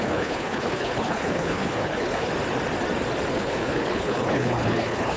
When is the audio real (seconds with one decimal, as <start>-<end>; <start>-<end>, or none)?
2.3-3.3